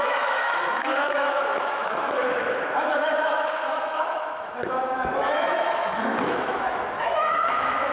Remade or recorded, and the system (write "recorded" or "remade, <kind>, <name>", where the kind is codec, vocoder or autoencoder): remade, autoencoder, DAC-VAE